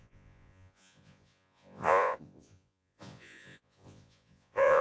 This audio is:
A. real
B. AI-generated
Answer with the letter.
B